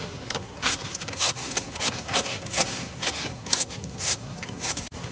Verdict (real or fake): fake